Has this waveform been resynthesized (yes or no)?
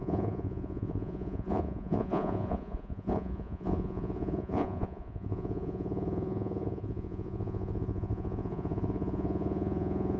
yes